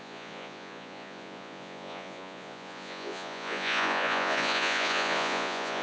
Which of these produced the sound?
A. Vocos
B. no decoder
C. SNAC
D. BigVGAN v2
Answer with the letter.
A